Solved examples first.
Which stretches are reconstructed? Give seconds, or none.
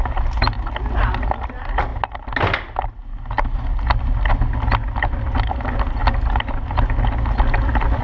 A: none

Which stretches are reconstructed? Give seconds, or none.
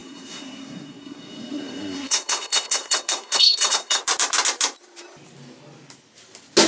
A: 0.0-4.0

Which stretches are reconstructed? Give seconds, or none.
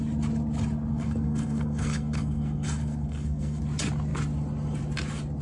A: 0.9-3.6